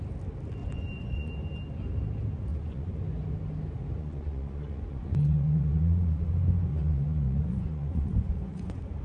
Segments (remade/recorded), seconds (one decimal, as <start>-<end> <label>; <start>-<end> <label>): 0.0-0.6 recorded; 0.6-1.3 remade; 1.3-2.5 recorded; 2.5-3.0 remade; 3.0-4.0 recorded; 4.0-6.3 remade; 6.3-6.7 recorded; 6.7-9.0 remade